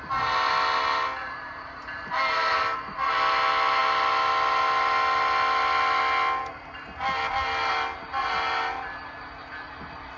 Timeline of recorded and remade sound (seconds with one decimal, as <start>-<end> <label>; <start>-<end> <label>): 0.0-1.2 recorded; 1.2-3.1 remade; 3.1-10.2 recorded